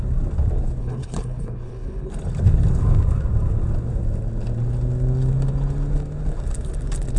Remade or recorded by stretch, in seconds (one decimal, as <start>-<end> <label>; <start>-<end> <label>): 0.0-0.8 recorded; 0.8-2.1 remade; 2.1-7.2 recorded